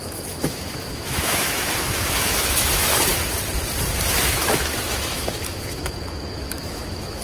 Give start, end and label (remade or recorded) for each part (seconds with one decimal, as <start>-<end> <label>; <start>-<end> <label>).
0.0-3.1 remade; 3.1-4.2 recorded; 4.2-7.2 remade